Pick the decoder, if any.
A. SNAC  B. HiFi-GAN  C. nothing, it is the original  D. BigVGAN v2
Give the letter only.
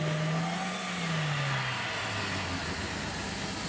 C